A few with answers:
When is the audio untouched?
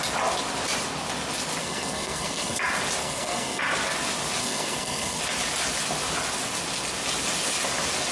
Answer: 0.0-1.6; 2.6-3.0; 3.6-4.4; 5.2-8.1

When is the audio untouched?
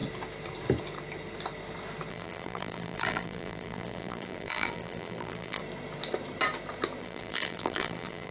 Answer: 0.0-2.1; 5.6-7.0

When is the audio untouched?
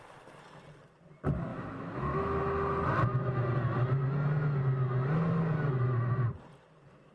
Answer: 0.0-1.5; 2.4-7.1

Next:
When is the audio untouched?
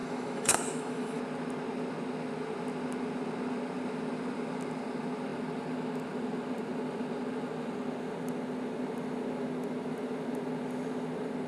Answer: 1.2-11.5